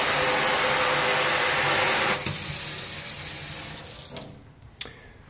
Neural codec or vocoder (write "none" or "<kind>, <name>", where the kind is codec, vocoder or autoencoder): none